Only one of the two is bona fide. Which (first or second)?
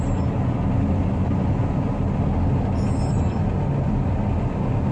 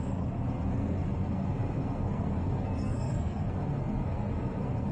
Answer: first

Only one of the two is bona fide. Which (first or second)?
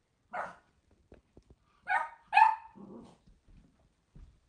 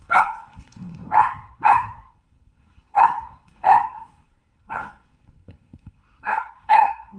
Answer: first